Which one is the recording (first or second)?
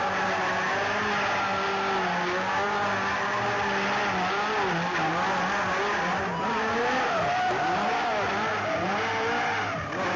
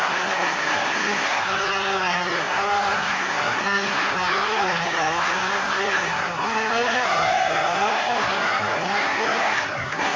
first